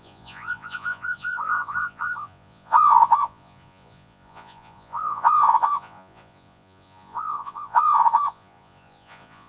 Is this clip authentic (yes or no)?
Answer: no